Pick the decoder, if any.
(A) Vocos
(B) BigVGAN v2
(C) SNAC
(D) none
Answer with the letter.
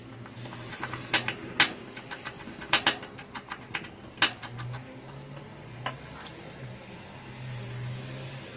D